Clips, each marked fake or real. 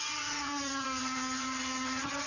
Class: fake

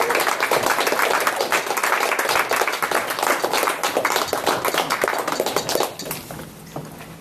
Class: real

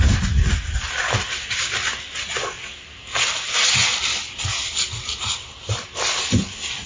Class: real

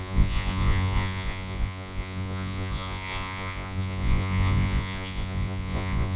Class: fake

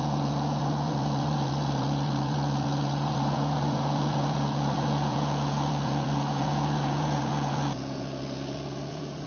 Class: fake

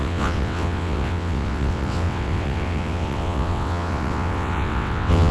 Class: fake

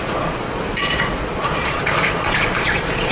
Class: fake